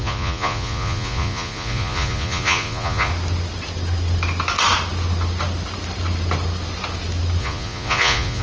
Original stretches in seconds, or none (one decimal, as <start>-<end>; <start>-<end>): 3.1-7.4